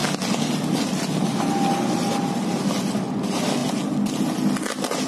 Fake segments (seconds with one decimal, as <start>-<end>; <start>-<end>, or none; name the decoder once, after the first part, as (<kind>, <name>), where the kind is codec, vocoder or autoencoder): none